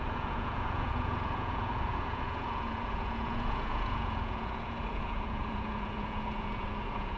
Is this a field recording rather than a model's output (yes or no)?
no